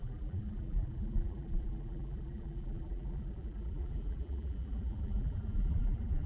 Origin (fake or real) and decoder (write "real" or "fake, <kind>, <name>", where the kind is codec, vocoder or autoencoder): fake, vocoder, BigVGAN v2